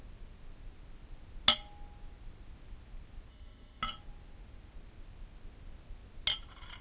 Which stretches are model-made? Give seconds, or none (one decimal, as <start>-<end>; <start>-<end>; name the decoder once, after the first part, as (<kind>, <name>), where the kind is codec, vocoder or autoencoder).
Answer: 3.3-3.8 (codec, ZipCodec)